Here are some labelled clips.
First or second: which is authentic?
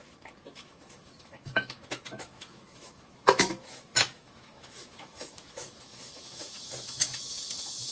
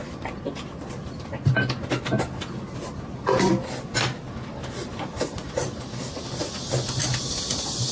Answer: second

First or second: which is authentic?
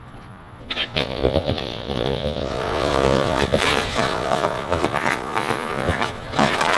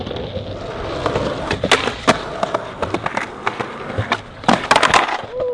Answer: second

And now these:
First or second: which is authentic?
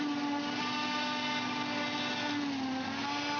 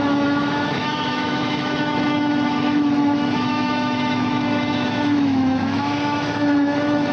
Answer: first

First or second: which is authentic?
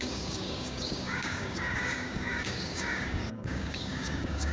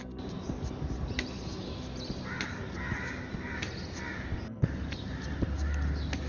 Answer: second